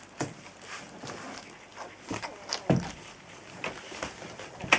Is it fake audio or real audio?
real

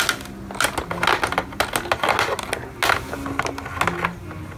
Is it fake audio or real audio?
real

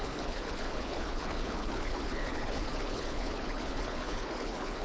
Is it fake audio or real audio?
fake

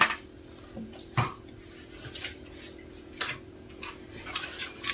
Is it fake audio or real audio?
real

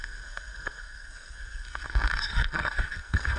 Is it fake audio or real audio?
fake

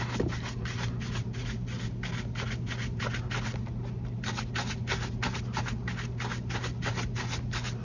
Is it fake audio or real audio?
real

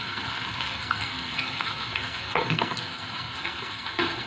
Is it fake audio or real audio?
fake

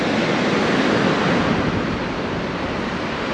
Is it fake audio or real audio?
real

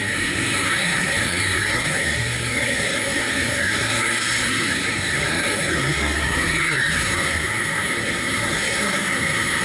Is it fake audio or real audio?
fake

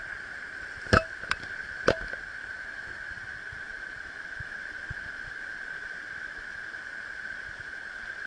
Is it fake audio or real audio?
real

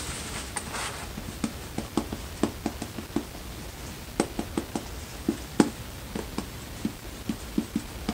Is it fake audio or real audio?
real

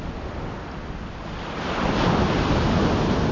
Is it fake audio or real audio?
real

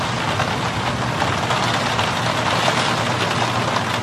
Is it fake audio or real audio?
real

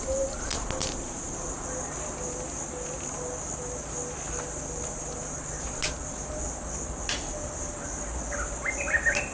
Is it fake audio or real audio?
real